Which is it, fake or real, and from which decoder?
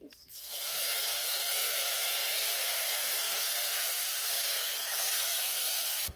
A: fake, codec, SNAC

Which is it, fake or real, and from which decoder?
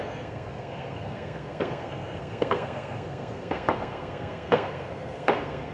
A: fake, codec, SNAC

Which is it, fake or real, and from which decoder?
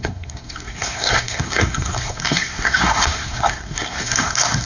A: fake, codec, SNAC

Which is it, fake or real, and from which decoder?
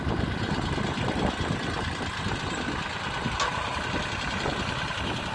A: real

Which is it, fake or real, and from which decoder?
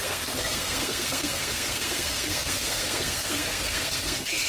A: fake, codec, SNAC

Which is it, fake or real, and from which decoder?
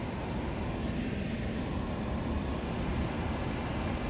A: real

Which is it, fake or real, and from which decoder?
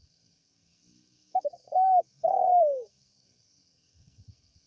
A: fake, codec, SNAC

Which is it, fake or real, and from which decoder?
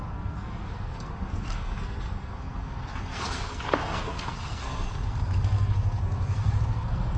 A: fake, codec, SNAC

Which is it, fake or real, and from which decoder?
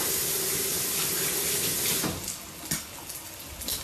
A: real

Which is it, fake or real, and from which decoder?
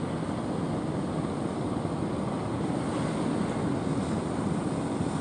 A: real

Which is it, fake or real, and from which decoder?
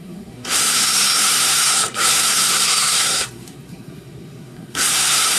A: fake, codec, SNAC